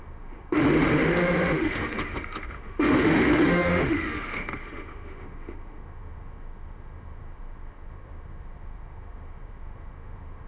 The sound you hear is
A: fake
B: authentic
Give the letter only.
A